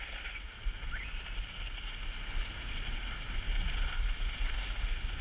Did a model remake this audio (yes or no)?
no